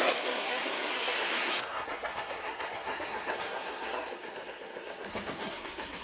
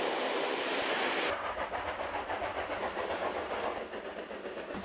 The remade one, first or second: first